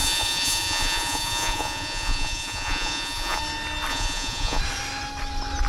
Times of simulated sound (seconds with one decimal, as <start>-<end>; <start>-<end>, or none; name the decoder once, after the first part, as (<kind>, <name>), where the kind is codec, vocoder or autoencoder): 0.0-3.4 (vocoder, Vocos); 3.9-4.6